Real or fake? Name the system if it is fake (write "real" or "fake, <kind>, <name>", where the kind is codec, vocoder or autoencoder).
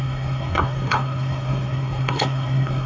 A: fake, codec, SNAC